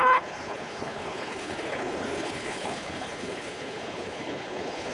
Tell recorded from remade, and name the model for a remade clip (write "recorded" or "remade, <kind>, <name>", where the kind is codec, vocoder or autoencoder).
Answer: remade, codec, HILCodec